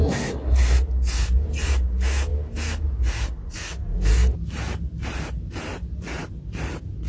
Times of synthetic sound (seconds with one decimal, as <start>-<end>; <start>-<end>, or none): 0.0-0.8